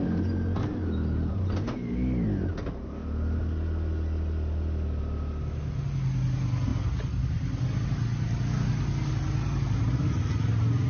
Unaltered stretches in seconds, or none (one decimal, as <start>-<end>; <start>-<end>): 0.0-10.9